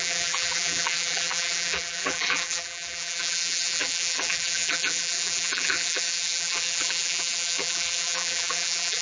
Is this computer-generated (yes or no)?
yes